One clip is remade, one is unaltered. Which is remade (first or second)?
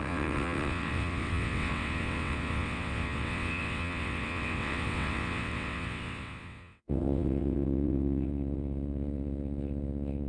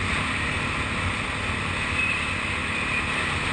first